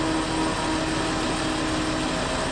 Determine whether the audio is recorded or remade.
recorded